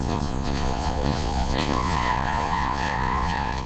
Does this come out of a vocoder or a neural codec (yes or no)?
yes